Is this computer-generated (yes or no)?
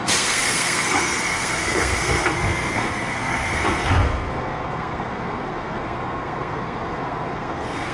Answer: yes